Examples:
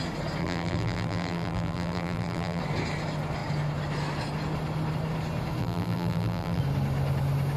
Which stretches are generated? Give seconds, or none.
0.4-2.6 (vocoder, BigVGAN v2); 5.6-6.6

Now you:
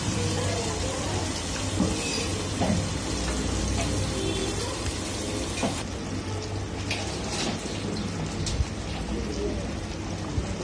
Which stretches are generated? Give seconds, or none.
none

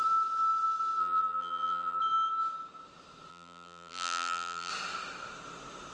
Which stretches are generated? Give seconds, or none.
1.0-2.0 (vocoder, BigVGAN v2); 3.3-4.7

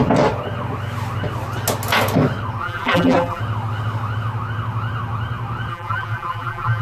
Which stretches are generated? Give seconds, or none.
2.6-3.4 (vocoder, BigVGAN v2); 5.7-6.8

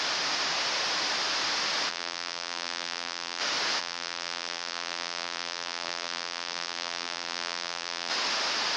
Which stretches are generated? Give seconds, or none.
1.9-3.4 (vocoder, BigVGAN v2); 3.8-8.1

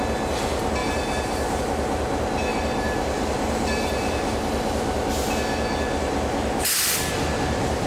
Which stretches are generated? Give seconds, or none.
0.8-1.6 (vocoder, BigVGAN v2); 2.5-4.4

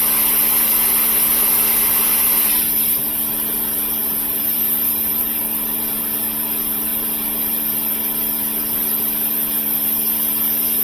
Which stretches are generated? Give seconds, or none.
4.0-5.4 (vocoder, BigVGAN v2)